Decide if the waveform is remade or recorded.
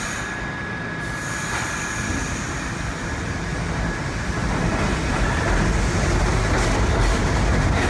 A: recorded